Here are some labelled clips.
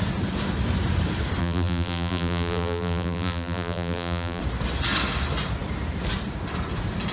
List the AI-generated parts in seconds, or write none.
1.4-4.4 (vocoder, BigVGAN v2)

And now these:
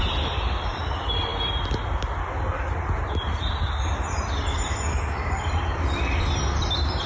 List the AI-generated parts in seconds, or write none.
0.0-1.3 (vocoder, BigVGAN v2); 5.6-7.1

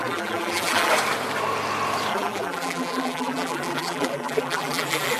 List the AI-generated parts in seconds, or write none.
0.0-0.9 (vocoder, BigVGAN v2); 2.1-5.2

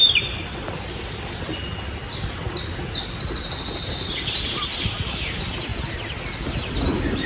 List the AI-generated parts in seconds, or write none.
none

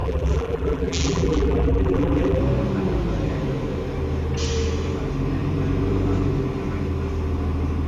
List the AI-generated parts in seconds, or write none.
0.0-2.4 (vocoder, BigVGAN v2)